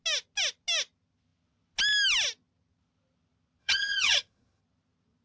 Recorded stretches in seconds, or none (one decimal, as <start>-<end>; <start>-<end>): 0.0-3.6; 4.6-5.2